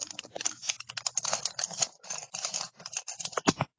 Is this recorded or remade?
recorded